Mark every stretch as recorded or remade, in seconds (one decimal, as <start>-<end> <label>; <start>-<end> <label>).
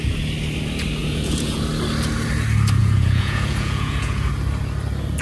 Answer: 0.0-1.0 recorded; 1.0-1.6 remade; 1.6-2.8 recorded; 2.8-4.3 remade; 4.3-5.2 recorded